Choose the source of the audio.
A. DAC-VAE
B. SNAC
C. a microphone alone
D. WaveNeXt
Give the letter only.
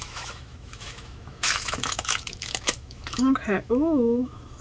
A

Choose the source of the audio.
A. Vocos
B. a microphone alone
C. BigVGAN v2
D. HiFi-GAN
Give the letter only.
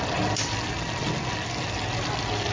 B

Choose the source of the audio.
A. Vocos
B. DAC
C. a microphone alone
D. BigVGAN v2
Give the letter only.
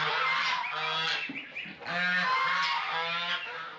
C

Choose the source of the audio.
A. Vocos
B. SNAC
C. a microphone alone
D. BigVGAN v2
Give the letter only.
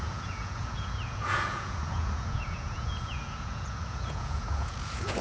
A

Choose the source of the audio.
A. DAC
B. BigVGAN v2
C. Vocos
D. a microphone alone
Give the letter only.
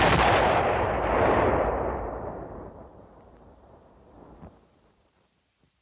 B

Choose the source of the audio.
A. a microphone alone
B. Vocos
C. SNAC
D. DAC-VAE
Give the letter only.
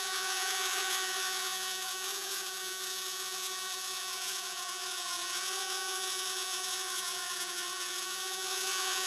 B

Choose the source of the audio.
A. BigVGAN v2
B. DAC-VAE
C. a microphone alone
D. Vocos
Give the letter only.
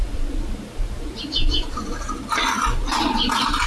A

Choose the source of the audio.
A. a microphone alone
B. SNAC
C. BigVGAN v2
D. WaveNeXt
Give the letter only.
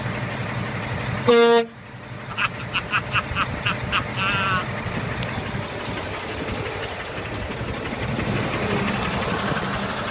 A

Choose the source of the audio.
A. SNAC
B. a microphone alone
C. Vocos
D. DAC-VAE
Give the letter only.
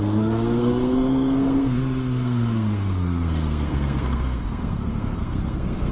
A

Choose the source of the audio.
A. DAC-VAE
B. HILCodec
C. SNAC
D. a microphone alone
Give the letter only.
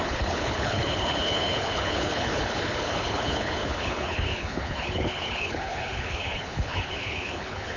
B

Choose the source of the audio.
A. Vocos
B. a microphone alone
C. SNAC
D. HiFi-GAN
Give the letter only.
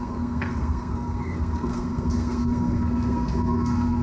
C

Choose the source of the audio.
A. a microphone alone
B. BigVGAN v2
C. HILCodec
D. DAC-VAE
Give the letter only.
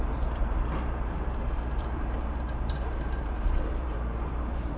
B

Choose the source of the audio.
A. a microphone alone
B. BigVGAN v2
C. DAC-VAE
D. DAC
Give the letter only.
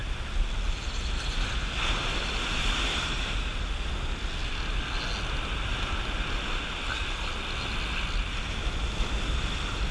A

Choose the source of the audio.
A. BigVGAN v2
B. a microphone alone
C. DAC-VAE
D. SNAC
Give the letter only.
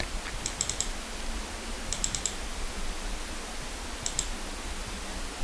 B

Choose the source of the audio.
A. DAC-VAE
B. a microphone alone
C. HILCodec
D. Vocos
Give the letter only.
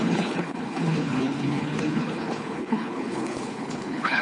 C